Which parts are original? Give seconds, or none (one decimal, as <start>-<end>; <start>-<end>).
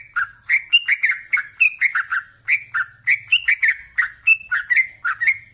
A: 0.0-5.5